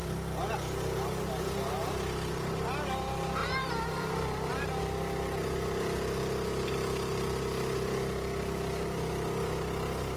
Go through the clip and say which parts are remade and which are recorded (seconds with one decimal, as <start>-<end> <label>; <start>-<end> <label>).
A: 0.0-3.4 recorded; 3.4-4.8 remade; 4.8-10.2 recorded